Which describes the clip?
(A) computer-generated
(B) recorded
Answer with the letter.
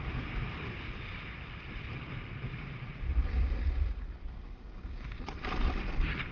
B